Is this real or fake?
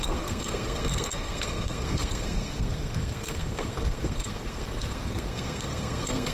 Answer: fake